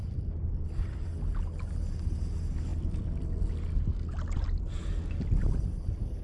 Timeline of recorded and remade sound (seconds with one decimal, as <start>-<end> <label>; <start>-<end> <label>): 0.0-1.1 remade; 1.1-2.7 recorded; 2.7-3.4 remade; 3.4-6.2 recorded